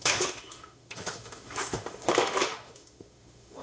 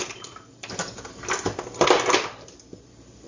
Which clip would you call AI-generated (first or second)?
first